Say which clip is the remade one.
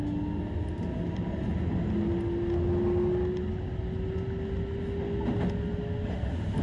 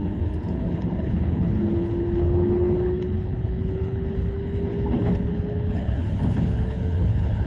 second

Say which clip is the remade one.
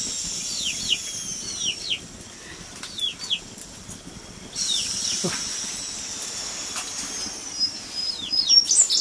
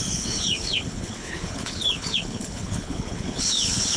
second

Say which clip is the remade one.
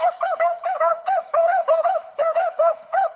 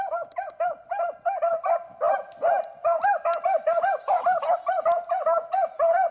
first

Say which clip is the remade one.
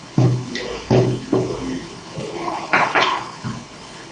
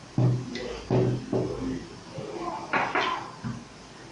first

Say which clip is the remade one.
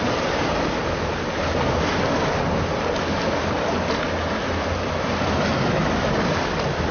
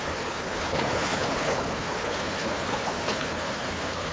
second